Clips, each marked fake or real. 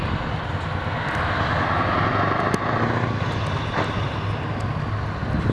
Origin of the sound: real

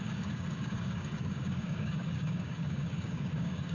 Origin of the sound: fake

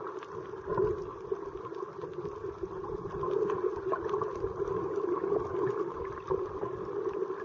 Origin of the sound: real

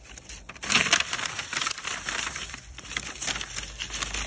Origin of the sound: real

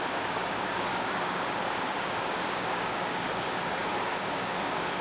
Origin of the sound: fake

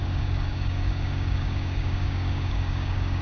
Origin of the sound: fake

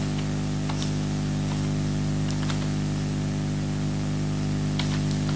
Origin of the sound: real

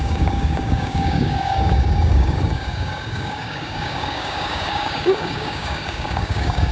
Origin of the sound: fake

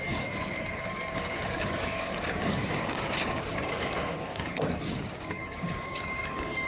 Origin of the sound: fake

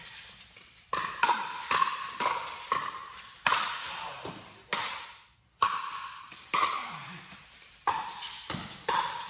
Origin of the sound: real